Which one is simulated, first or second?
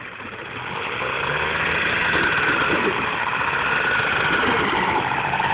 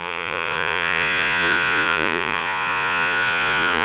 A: second